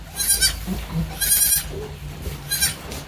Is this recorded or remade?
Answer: recorded